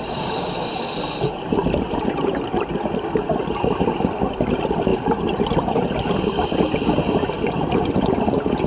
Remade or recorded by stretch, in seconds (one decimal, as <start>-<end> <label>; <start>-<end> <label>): 0.0-8.7 recorded